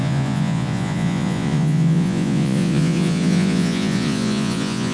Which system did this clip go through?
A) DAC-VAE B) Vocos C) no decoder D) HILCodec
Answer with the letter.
B